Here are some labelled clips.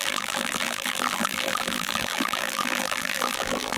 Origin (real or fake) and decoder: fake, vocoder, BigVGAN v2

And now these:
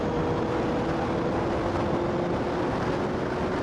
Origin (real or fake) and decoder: real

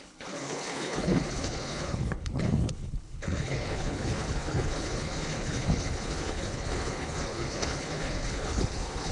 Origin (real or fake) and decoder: fake, codec, HILCodec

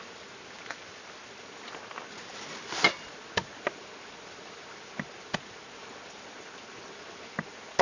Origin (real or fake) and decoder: real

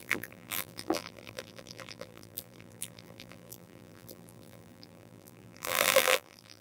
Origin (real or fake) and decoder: fake, vocoder, BigVGAN v2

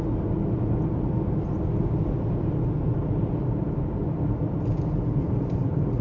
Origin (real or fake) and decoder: fake, vocoder, BigVGAN v2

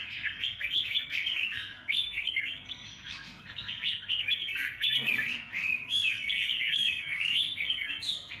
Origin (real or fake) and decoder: fake, codec, SNAC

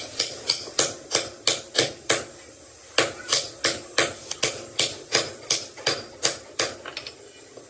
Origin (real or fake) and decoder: real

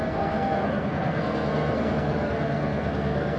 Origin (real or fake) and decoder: fake, codec, SNAC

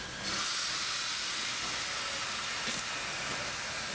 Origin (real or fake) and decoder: real